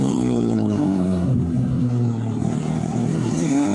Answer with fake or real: fake